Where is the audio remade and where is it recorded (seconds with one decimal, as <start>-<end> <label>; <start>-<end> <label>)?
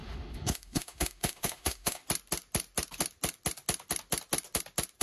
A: 0.0-2.0 remade; 2.0-5.0 recorded